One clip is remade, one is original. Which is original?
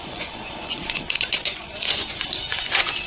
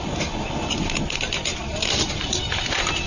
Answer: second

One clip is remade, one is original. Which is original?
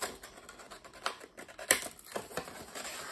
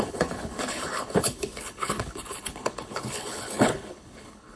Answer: first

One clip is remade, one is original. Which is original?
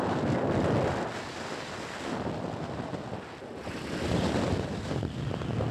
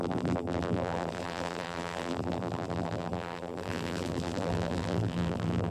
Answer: first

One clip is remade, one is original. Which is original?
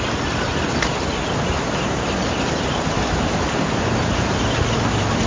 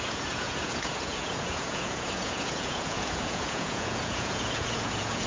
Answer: first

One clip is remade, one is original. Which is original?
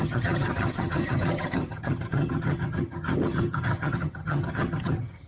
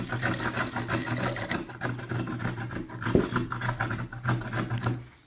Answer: second